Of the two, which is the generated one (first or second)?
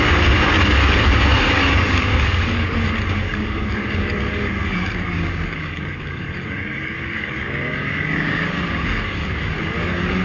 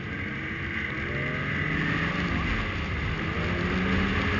first